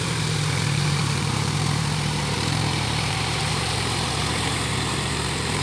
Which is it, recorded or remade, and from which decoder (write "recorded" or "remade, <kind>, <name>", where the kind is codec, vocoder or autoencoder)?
remade, vocoder, BigVGAN v2